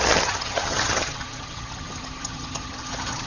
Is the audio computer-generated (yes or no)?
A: yes